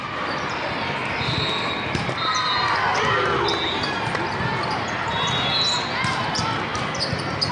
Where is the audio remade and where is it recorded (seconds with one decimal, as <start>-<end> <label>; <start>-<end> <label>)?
0.0-7.5 recorded